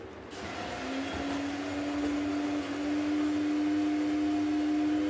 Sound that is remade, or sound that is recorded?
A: recorded